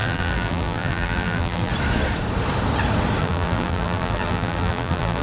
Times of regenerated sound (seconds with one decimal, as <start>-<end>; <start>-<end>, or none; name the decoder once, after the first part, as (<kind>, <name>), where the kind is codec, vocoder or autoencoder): 0.0-1.7 (vocoder, BigVGAN v2); 3.2-5.2